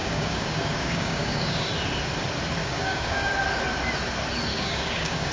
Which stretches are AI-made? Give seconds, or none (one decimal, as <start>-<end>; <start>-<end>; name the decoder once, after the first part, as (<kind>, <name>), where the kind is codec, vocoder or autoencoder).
0.0-1.7 (codec, DAC); 2.6-3.3; 4.5-5.3